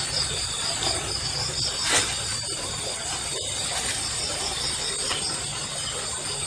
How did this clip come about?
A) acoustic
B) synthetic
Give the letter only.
A